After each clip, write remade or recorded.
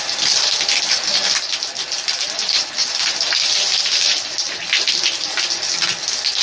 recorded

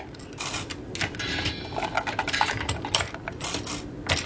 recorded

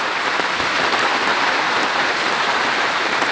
remade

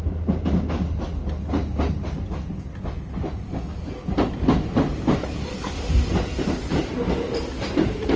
recorded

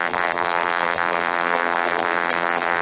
remade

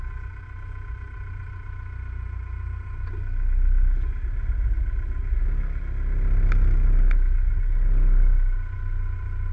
recorded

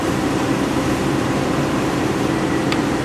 remade